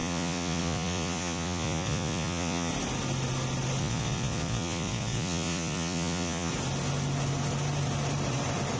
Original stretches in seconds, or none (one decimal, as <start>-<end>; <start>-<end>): 2.7-3.8; 6.5-8.8